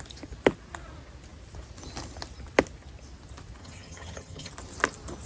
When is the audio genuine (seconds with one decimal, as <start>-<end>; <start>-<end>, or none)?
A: 0.0-3.6; 4.5-5.3